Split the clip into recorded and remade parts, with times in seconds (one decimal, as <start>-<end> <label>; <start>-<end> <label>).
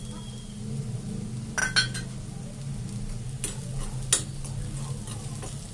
0.0-5.7 recorded